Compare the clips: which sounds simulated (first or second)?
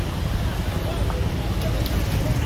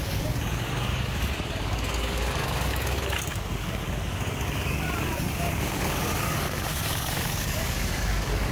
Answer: second